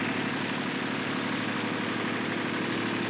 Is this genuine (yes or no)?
yes